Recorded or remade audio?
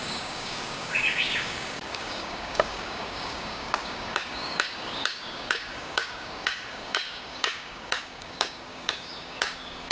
remade